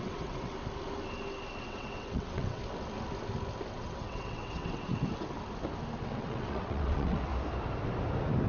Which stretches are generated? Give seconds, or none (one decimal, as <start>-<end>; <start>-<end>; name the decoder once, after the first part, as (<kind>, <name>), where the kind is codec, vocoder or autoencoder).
0.0-0.5 (vocoder, WaveNeXt); 1.6-2.6; 3.7-4.9; 6.0-7.3